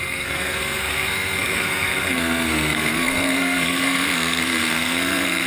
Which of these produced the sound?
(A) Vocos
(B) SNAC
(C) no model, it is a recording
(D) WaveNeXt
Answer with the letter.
B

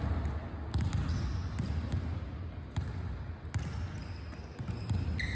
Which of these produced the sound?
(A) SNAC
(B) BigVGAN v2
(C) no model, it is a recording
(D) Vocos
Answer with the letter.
C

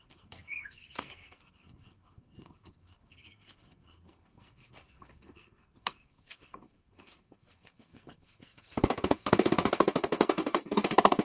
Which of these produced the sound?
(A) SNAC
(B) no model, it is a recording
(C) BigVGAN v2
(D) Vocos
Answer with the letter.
A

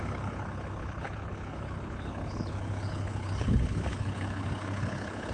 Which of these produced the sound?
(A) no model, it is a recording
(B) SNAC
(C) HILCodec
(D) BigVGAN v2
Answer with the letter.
C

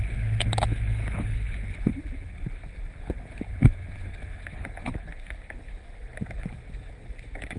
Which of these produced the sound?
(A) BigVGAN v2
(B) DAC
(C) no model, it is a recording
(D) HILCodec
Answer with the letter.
D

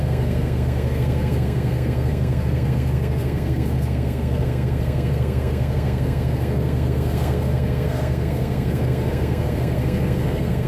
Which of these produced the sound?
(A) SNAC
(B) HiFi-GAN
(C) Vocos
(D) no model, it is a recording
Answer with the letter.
A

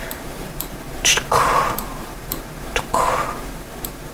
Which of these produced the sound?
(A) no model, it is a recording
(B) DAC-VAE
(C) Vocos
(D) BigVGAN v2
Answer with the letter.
D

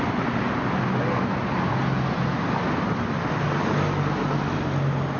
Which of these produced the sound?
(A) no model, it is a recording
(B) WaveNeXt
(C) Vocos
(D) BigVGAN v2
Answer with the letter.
A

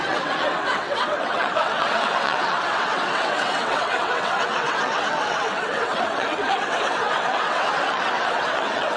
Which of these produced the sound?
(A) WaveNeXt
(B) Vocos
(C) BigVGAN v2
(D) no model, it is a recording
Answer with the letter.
A